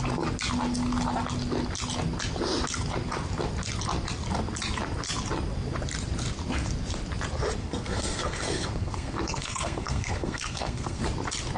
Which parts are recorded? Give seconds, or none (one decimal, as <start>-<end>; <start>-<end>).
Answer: 0.0-7.6; 11.0-11.6